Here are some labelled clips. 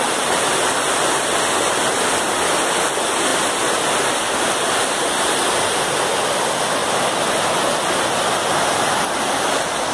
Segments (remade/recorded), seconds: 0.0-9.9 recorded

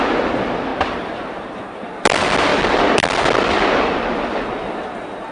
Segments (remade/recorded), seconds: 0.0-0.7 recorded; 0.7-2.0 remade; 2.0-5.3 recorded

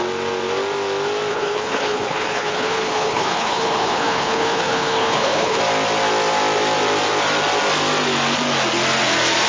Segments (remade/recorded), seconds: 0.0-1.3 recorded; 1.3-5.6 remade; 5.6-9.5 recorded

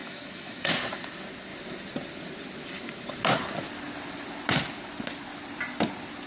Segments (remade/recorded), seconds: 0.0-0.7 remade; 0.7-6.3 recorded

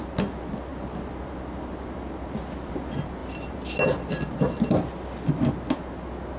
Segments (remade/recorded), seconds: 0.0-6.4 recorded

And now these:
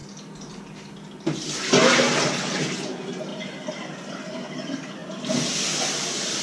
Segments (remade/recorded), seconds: 0.0-6.4 recorded

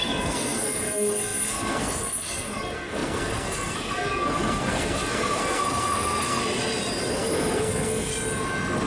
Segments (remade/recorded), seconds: 0.0-6.4 remade; 6.4-7.1 recorded; 7.1-8.1 remade; 8.1-8.9 recorded

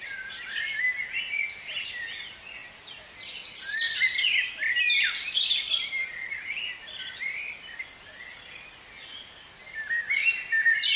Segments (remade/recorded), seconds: 0.0-11.0 recorded